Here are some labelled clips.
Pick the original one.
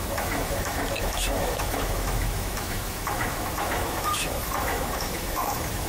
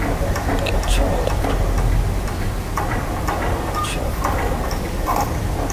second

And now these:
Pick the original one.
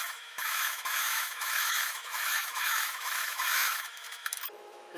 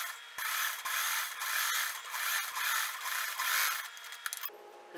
second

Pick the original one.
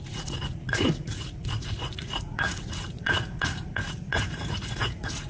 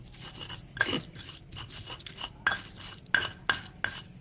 second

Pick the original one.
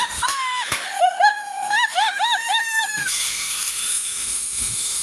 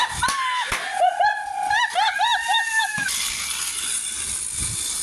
second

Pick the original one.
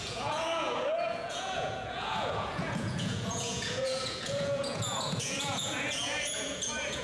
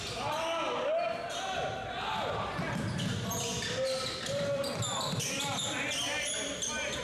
second